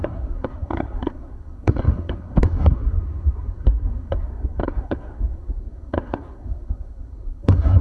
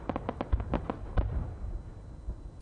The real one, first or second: second